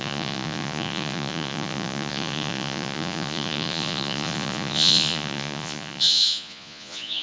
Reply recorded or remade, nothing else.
remade